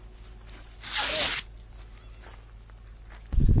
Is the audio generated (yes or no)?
no